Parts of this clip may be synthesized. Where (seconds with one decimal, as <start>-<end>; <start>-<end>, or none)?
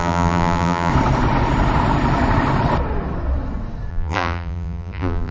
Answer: 0.0-0.9; 3.9-5.3